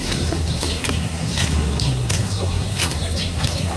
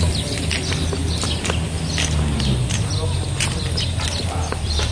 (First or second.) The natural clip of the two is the second